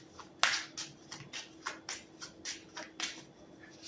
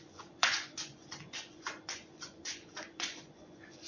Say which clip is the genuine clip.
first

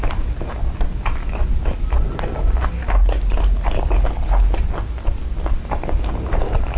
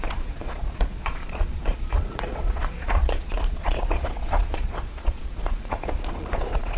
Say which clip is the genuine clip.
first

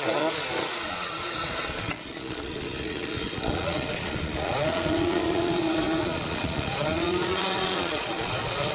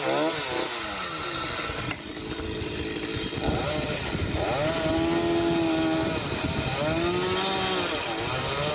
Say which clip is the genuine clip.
second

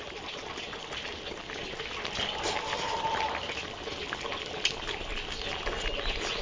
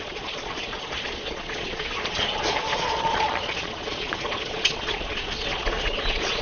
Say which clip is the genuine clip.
first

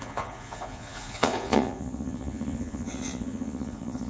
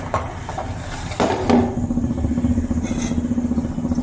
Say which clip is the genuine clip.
second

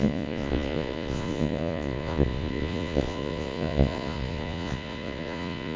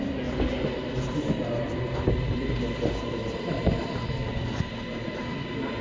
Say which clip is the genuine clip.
second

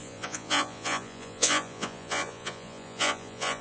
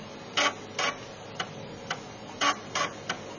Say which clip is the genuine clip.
second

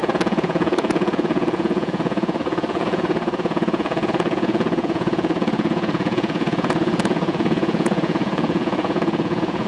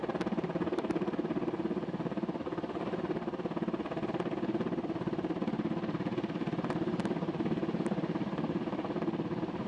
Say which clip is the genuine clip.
second